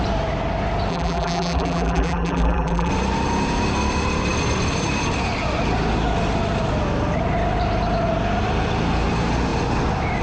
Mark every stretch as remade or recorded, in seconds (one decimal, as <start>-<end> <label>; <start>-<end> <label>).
0.0-0.9 recorded; 0.9-2.9 remade; 2.9-10.2 recorded